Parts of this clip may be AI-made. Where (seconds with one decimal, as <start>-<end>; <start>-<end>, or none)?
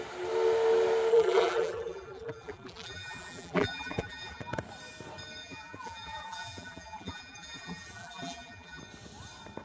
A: 1.1-4.4; 5.4-8.8